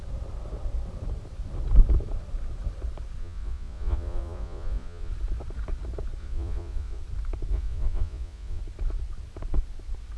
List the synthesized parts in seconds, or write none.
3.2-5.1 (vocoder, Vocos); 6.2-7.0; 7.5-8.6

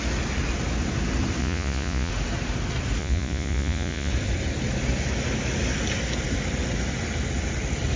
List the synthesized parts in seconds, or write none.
1.4-2.1 (vocoder, Vocos); 3.0-4.1

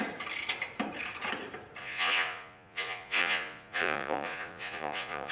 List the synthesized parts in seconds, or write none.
1.8-5.3 (vocoder, Vocos)

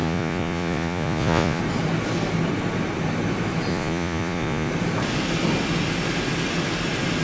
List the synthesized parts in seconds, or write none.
0.0-1.6 (vocoder, Vocos); 3.7-4.7

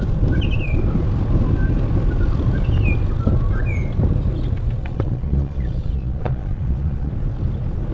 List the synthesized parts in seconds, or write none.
4.8-7.1 (vocoder, Vocos)

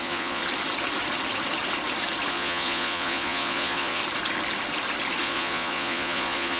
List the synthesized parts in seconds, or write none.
0.0-0.4 (vocoder, Vocos); 2.3-4.0; 5.2-6.6